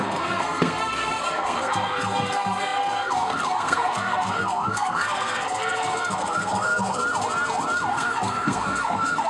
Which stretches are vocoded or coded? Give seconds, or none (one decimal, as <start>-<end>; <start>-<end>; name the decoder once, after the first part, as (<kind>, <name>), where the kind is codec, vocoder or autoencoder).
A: 0.0-7.0 (codec, SNAC); 7.9-9.3